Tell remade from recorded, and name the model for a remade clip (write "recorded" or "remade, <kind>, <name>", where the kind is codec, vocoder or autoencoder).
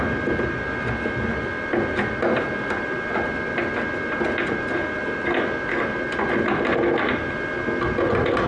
recorded